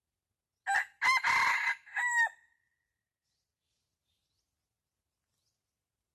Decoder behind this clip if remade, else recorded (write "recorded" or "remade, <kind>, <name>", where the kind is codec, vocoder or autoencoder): recorded